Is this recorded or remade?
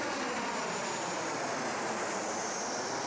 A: recorded